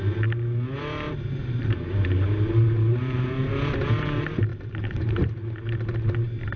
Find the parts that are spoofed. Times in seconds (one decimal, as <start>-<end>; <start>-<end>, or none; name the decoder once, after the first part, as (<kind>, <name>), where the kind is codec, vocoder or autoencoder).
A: 1.4-3.5 (vocoder, BigVGAN v2); 4.5-5.3